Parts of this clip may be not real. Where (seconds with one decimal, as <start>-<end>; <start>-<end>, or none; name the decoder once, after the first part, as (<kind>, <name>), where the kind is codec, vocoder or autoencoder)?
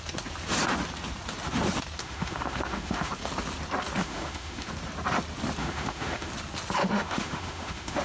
2.0-3.1 (autoencoder, DAC-VAE); 4.0-4.7; 5.6-6.3; 6.8-8.0